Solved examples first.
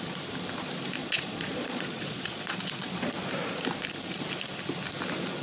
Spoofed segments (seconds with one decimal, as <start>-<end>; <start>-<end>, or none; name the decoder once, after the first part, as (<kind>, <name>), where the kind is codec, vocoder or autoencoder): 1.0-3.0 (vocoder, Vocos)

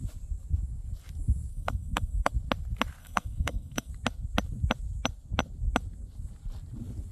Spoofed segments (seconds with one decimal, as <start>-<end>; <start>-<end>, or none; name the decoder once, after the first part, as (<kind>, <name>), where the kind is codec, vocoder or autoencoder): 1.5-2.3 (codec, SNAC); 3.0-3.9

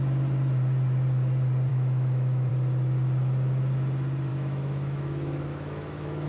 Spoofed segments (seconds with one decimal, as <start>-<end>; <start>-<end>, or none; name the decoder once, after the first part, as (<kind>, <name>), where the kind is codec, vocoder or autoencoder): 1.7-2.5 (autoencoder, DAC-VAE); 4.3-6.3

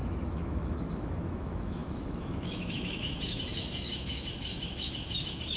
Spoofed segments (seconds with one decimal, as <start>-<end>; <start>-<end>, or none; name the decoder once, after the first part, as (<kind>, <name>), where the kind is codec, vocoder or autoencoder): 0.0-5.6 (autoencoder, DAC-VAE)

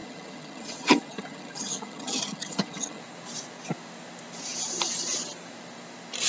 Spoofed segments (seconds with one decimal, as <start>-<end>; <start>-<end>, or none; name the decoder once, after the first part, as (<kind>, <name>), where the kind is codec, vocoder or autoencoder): 0.0-3.0 (vocoder, HiFi-GAN)

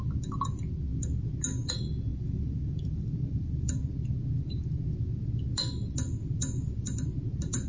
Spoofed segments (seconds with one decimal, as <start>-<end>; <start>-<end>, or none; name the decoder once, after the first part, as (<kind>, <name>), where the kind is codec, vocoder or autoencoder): 2.1-3.9 (vocoder, BigVGAN v2)